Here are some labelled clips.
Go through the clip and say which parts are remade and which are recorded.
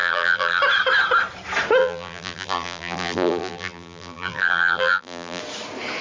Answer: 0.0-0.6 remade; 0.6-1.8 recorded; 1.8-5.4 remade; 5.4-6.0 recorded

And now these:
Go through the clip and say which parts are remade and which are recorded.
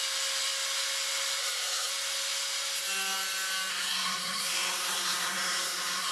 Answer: 0.0-1.4 recorded; 1.4-1.9 remade; 1.9-3.7 recorded; 3.7-6.1 remade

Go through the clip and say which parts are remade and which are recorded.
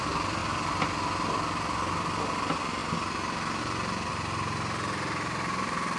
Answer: 0.0-4.1 recorded; 4.1-6.0 remade